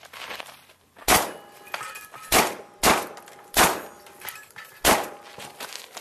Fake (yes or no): no